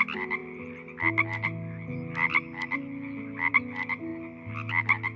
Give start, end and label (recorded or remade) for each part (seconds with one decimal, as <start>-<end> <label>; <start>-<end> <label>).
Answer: 0.0-5.2 recorded